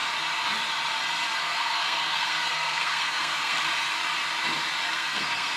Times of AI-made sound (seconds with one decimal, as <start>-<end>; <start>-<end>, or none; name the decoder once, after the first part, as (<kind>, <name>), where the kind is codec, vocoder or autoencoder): 1.4-3.7 (codec, SNAC); 4.9-5.6